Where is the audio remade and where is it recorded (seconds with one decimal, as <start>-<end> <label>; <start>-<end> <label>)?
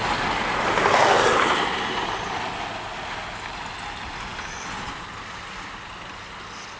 0.0-6.8 recorded